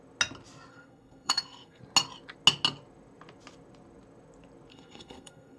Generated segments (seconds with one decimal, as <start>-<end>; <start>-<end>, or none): 0.7-1.8; 4.7-5.6